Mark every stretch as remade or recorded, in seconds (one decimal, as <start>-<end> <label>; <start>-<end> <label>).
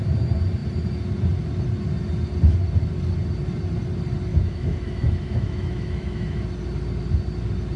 0.0-4.3 recorded; 4.3-6.4 remade; 6.4-7.8 recorded